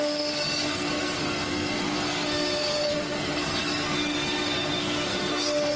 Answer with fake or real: fake